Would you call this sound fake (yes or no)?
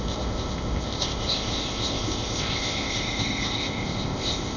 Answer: yes